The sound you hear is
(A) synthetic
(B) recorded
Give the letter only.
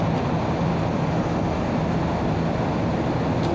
B